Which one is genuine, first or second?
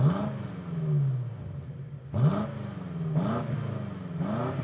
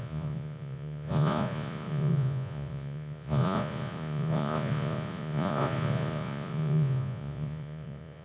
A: first